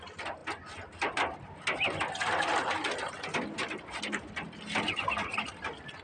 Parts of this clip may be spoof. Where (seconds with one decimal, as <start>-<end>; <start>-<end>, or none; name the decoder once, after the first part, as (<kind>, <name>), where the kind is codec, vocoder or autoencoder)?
none